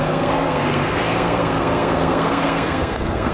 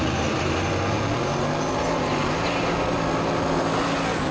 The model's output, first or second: first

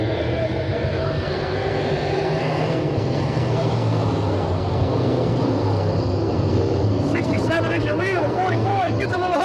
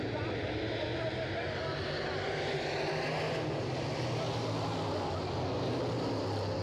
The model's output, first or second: first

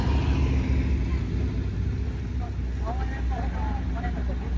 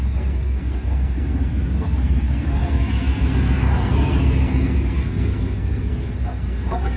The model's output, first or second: second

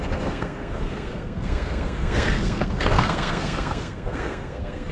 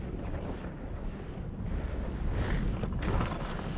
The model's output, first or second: first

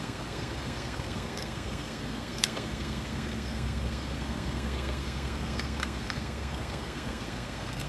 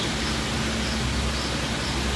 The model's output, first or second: first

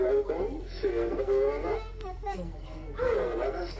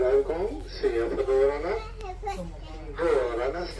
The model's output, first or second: first